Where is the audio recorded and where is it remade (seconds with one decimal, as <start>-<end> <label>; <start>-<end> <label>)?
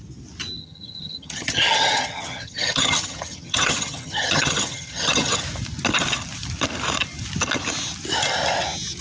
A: 0.0-0.6 recorded; 0.6-5.4 remade; 5.4-9.0 recorded